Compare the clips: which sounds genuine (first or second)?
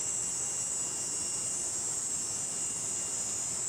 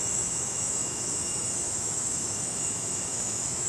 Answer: first